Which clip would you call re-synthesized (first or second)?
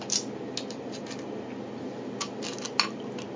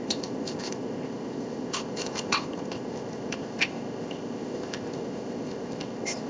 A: second